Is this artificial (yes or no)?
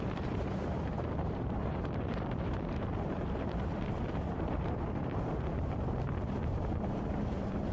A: yes